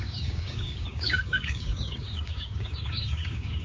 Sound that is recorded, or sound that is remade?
remade